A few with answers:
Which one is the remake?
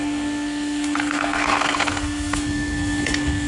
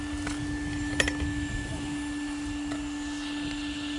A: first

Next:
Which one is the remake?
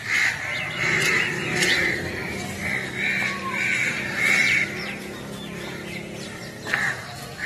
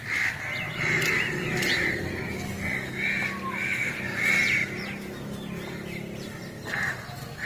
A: first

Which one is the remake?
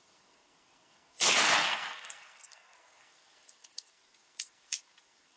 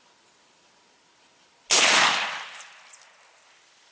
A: first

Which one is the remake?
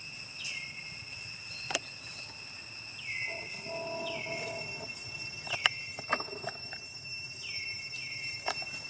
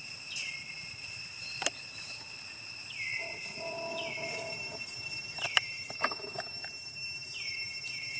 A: second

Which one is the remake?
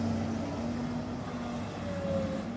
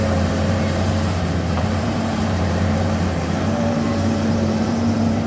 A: second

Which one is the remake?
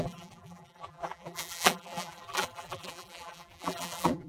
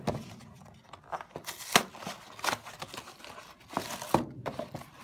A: first